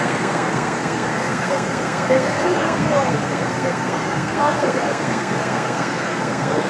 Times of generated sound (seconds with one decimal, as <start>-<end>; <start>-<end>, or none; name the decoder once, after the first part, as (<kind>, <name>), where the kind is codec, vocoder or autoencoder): 0.0-6.7 (codec, SNAC)